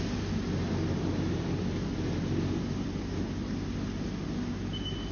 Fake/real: real